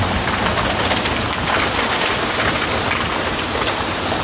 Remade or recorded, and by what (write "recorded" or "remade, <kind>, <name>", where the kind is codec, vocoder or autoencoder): recorded